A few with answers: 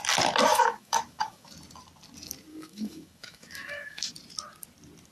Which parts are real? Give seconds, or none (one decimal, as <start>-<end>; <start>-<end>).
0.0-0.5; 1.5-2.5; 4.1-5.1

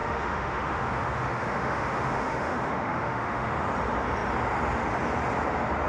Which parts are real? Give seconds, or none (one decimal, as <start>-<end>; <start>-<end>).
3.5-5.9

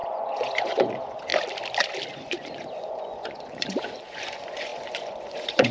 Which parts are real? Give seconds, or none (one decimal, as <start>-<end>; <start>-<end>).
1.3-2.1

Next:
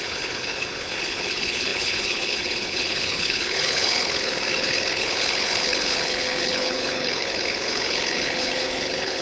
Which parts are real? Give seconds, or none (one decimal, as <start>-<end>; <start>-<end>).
none

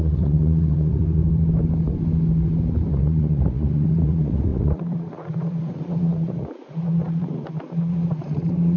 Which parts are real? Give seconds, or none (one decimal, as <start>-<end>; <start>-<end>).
1.2-2.9

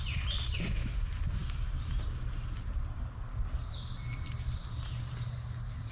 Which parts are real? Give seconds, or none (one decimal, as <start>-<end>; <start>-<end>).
0.0-5.9